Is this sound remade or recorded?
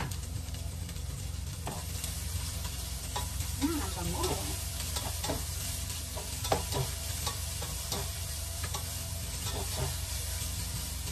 remade